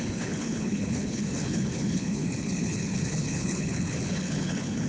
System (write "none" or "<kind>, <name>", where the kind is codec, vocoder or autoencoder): codec, HILCodec